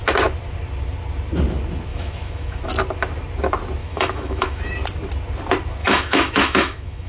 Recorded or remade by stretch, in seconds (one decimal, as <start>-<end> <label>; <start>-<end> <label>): 0.0-1.9 recorded; 1.9-2.6 remade; 2.6-3.8 recorded; 3.8-4.6 remade; 4.6-5.8 recorded; 5.8-7.1 remade